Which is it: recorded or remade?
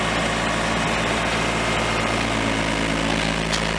recorded